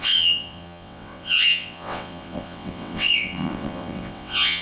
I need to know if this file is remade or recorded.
remade